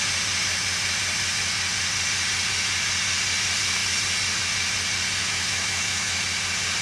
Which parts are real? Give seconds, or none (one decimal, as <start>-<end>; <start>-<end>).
0.0-5.2; 6.2-6.8